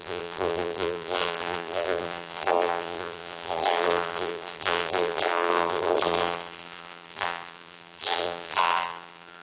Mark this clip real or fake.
fake